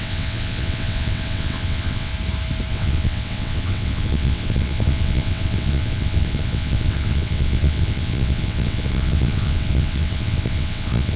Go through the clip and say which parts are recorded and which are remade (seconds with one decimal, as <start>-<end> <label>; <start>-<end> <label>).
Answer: 0.0-2.1 remade; 2.1-2.7 recorded; 2.7-11.2 remade